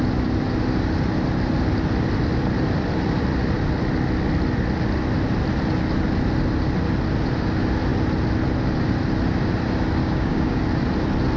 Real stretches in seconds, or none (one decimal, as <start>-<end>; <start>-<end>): 0.0-10.0; 10.6-11.4